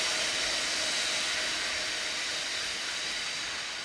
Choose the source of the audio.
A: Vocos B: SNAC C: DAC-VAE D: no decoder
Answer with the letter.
D